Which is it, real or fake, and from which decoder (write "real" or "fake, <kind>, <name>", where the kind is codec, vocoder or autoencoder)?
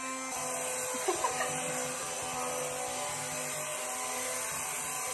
real